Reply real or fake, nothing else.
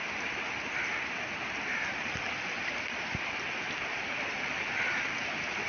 real